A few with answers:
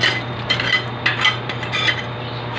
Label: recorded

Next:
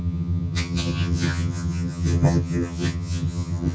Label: remade